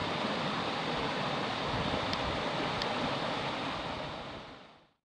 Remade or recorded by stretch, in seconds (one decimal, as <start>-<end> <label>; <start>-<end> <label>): 0.0-2.4 remade; 2.4-5.1 recorded